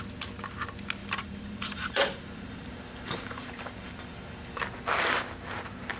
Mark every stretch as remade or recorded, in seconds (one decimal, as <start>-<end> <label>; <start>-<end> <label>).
0.0-1.0 recorded; 1.0-4.6 remade; 4.6-6.0 recorded